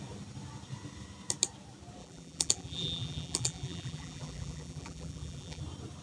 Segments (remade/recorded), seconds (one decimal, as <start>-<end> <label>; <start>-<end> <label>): 0.0-2.0 recorded; 2.0-5.6 remade; 5.6-6.0 recorded

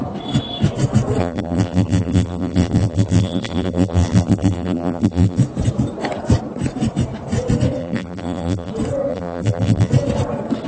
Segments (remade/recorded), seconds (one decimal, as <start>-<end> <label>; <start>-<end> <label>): 0.0-1.2 recorded; 1.2-5.4 remade; 5.4-7.8 recorded; 7.8-8.7 remade; 8.7-9.1 recorded; 9.1-9.9 remade; 9.9-10.7 recorded